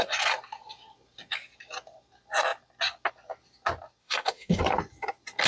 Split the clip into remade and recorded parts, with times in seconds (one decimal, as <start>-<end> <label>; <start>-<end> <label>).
0.0-4.0 recorded; 4.0-4.6 remade; 4.6-5.5 recorded